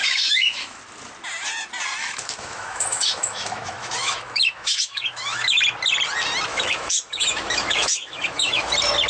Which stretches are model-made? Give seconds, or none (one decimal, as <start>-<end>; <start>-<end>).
0.0-0.8; 2.0-5.6; 6.5-8.7